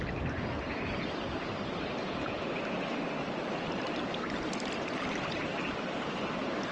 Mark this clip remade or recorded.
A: recorded